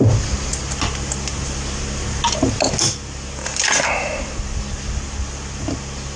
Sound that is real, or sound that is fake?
real